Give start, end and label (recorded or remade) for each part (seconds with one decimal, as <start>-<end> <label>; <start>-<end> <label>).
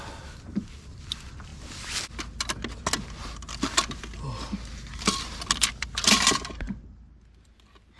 0.0-8.0 recorded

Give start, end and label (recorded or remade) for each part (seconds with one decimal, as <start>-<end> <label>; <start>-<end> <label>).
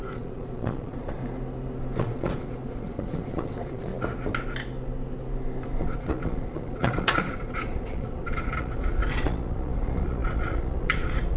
0.0-1.2 remade; 1.2-2.0 recorded; 2.0-3.9 remade; 3.9-5.8 recorded; 5.8-11.4 remade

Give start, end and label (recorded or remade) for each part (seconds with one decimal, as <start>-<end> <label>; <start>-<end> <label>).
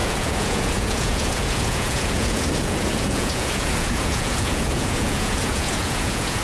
0.0-6.4 remade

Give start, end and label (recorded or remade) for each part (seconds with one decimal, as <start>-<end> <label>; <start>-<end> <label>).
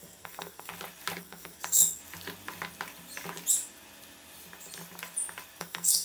0.0-0.7 remade; 0.7-1.2 recorded; 1.2-2.0 remade; 2.0-5.6 recorded; 5.6-6.0 remade